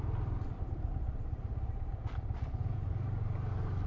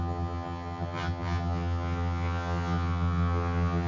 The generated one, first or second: second